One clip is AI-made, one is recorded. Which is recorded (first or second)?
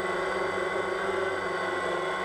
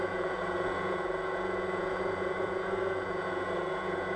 first